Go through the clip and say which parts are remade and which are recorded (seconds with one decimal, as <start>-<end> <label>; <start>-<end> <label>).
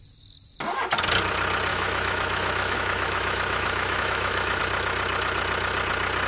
0.0-1.7 recorded; 1.7-4.6 remade; 4.6-6.3 recorded